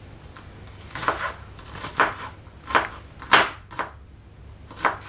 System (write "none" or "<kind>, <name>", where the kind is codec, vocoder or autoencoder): none